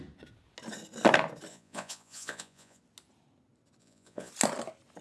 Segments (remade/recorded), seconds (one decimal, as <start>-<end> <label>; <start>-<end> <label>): 0.0-1.5 recorded; 1.5-2.8 remade; 2.8-3.8 recorded; 3.8-4.3 remade; 4.3-5.0 recorded